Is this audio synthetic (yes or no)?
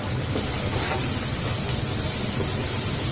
no